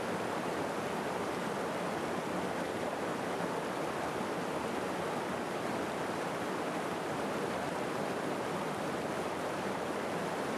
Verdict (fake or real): real